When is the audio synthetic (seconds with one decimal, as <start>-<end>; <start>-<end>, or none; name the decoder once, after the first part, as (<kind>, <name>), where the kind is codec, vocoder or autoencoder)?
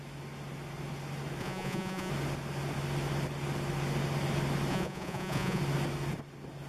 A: 1.4-2.1 (vocoder, Vocos); 4.7-5.6